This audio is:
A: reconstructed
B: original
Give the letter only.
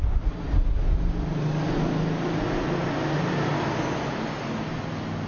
B